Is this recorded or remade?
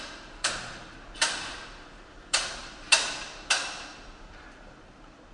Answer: remade